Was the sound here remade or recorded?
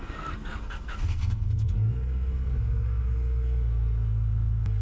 remade